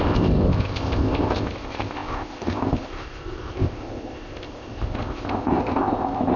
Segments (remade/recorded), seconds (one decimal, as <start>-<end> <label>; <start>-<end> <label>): 0.0-6.4 remade